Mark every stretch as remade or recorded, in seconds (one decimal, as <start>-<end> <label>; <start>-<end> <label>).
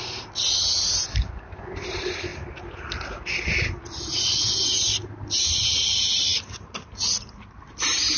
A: 0.0-8.2 recorded